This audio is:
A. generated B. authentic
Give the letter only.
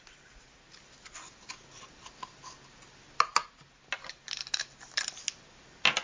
B